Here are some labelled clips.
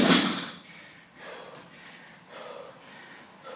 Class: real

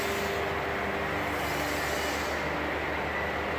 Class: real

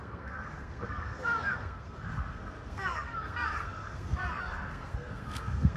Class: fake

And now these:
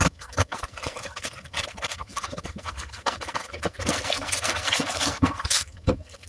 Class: fake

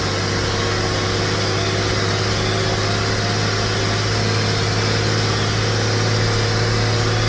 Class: real